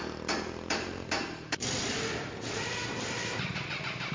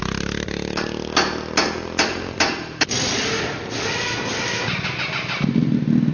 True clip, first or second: second